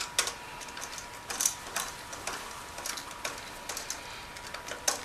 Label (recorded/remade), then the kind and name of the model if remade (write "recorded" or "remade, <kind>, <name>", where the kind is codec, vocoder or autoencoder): recorded